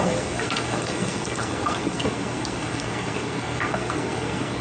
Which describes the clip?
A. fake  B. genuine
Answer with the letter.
A